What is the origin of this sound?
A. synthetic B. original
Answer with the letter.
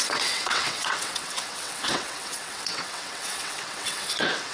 A